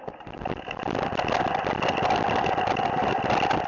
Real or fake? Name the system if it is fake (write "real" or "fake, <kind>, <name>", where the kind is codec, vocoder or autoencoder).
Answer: real